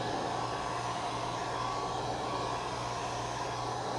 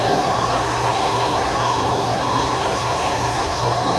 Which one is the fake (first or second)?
second